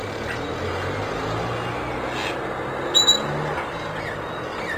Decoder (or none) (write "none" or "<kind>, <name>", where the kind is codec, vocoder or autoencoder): none